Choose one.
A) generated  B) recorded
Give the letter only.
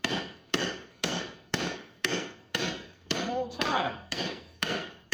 A